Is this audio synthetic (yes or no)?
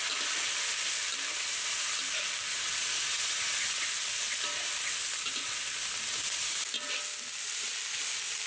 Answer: no